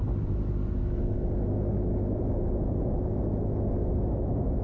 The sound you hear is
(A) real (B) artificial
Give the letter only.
A